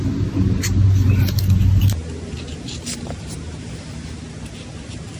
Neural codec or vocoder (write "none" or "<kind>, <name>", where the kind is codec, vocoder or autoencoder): none